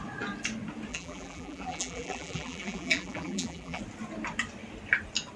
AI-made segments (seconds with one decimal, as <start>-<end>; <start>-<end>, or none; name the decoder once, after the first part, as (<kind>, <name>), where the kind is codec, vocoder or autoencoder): 0.9-3.8 (vocoder, BigVGAN v2)